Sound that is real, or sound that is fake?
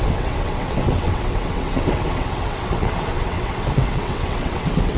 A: fake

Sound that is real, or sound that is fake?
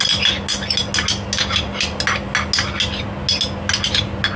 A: real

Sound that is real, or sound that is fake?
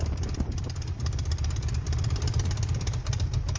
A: fake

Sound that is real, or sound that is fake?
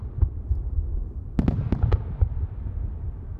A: real